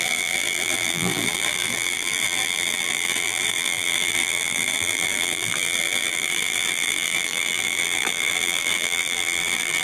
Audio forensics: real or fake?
fake